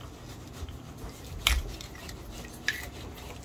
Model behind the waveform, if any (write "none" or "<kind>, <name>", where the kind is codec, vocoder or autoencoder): none